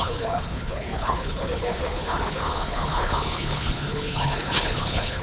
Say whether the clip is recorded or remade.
remade